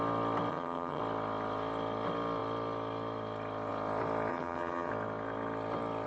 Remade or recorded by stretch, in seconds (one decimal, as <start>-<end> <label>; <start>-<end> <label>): 0.0-0.5 recorded; 0.5-1.0 remade; 1.0-4.3 recorded; 4.3-4.9 remade; 4.9-6.1 recorded